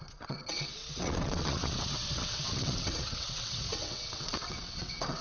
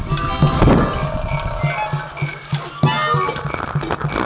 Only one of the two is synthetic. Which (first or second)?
first